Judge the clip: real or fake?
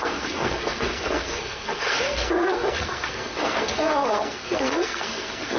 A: fake